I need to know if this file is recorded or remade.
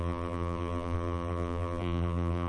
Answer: remade